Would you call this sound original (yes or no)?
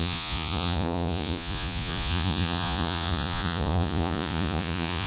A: no